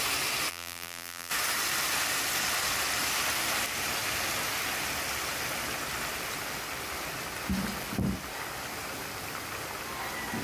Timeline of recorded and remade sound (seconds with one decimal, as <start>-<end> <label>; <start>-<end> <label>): 0.0-0.5 recorded; 0.5-1.3 remade; 1.3-10.4 recorded